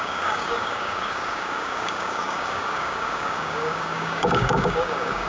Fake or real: fake